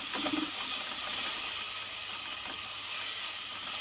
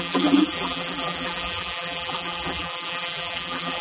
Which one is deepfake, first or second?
second